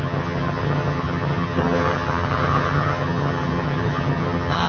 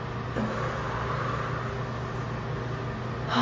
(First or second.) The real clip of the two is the second